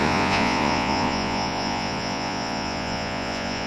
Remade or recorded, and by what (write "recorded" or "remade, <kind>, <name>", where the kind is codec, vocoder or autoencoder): remade, vocoder, Vocos